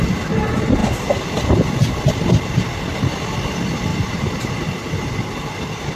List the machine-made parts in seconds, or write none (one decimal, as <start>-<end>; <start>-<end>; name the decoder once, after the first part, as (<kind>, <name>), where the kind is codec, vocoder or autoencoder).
3.9-4.5 (vocoder, BigVGAN v2)